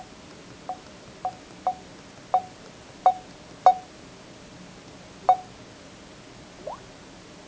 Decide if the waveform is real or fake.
real